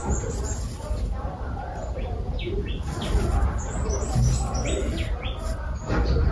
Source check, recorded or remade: recorded